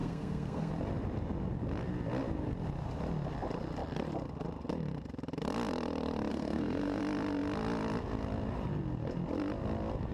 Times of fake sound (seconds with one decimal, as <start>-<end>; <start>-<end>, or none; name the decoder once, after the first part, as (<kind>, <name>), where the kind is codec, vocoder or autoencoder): 0.0-0.7 (codec, SNAC); 6.3-7.0